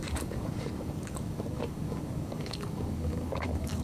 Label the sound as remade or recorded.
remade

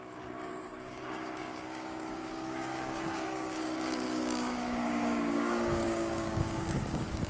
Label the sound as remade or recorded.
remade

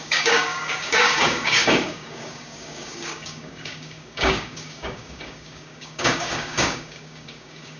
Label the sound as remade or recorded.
remade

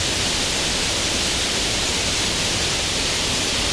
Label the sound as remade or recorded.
recorded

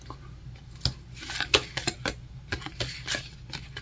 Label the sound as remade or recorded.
recorded